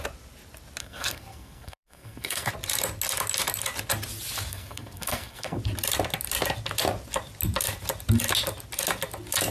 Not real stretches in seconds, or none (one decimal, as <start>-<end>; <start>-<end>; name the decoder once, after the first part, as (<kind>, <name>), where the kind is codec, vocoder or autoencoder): 0.8-2.5 (codec, SNAC); 4.5-5.6